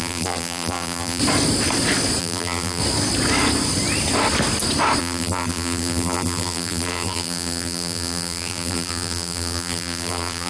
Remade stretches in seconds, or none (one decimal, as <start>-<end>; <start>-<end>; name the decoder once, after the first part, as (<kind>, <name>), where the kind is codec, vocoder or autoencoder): 0.0-1.2 (vocoder, BigVGAN v2); 2.2-2.8; 5.0-10.5